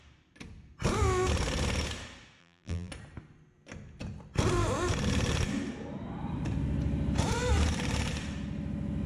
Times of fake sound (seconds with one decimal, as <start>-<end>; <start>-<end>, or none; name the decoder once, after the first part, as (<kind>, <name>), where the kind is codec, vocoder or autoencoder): 2.4-2.9 (vocoder, BigVGAN v2)